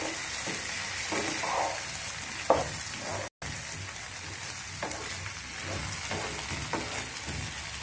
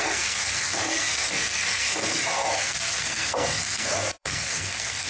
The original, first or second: first